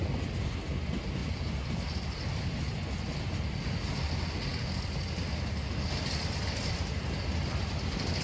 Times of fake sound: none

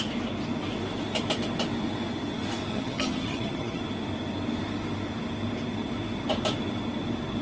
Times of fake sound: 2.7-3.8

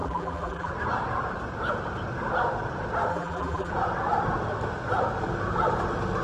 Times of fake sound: 0.0-0.7; 3.1-3.7

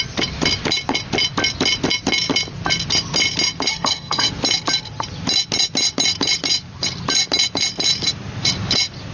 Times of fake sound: 3.7-4.3